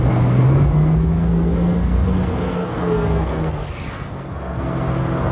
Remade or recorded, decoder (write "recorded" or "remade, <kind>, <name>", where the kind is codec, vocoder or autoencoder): remade, codec, SNAC